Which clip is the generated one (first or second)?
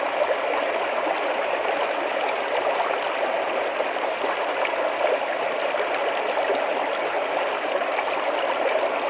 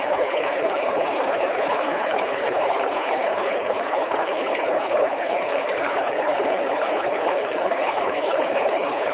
second